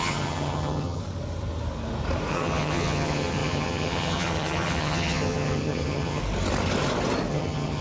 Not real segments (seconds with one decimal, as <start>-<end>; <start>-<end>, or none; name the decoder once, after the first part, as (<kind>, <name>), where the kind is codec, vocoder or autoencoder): 0.0-1.0 (vocoder, HiFi-GAN); 2.3-6.2; 7.3-7.8